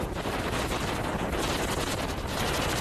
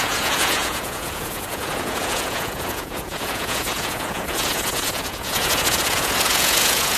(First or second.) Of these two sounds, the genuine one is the first